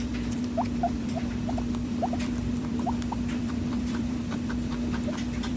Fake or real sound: fake